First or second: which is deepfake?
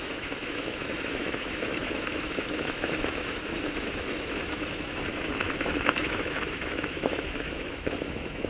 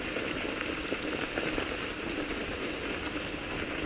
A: first